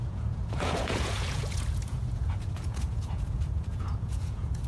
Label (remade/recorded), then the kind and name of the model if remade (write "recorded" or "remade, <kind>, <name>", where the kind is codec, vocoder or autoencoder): remade, vocoder, Vocos